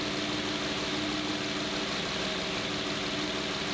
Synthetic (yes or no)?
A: no